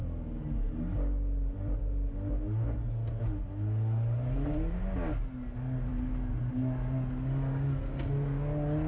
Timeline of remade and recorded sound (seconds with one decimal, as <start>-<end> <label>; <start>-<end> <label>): 0.0-8.9 recorded